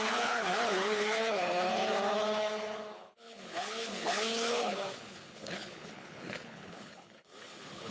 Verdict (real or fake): fake